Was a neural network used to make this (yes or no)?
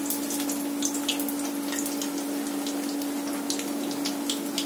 no